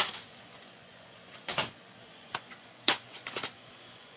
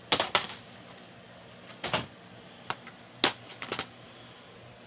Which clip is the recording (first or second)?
second